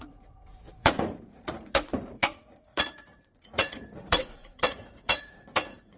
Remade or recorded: remade